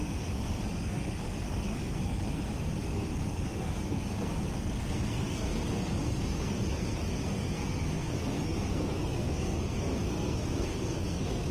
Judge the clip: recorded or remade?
remade